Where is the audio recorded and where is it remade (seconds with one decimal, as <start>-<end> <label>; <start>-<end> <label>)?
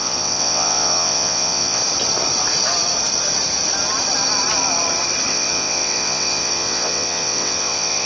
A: 0.0-1.8 remade; 1.8-5.3 recorded; 5.3-8.1 remade